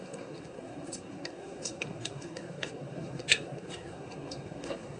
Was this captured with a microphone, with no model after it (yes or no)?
no